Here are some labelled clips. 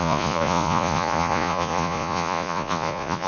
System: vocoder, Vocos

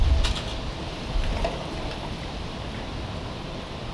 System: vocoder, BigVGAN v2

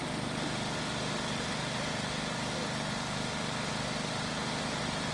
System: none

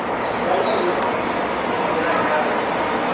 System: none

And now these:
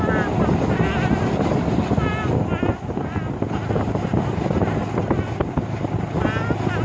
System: none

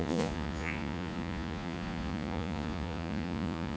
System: vocoder, Vocos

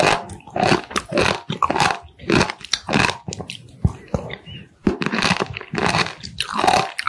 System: none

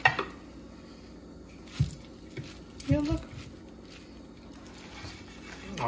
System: none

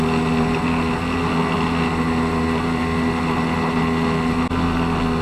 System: none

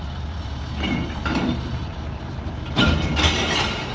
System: vocoder, BigVGAN v2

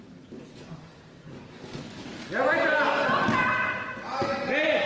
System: none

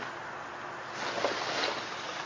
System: none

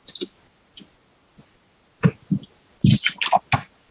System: none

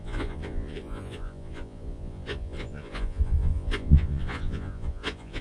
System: vocoder, Vocos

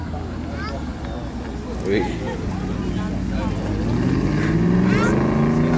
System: none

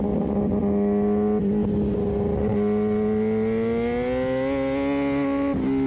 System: none